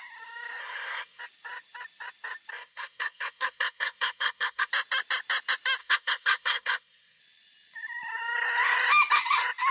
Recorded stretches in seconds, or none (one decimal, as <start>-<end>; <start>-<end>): 0.0-0.6; 1.2-2.5; 4.7-5.8; 7.2-9.7